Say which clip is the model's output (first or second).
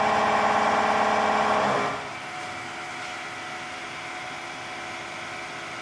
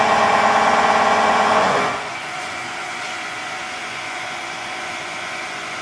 second